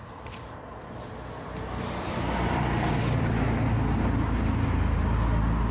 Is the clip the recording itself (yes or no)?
yes